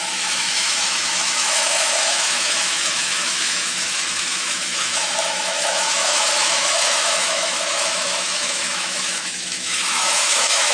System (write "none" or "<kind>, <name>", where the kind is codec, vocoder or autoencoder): autoencoder, DAC-VAE